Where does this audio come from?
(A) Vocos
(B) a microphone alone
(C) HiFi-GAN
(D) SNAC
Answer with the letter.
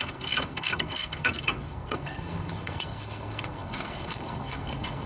D